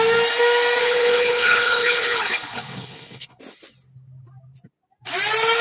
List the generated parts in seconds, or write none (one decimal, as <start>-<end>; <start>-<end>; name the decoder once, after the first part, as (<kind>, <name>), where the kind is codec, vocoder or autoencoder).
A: 0.8-3.4 (codec, HILCodec)